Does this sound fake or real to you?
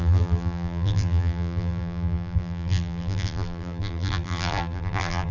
fake